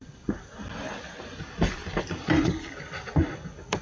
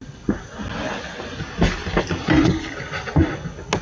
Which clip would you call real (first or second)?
second